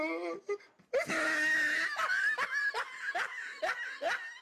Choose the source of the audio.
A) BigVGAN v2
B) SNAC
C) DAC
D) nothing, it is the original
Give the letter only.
D